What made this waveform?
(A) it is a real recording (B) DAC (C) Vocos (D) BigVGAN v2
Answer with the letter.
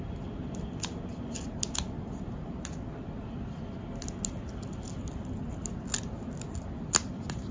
A